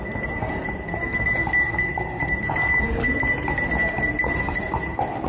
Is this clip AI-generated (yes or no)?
no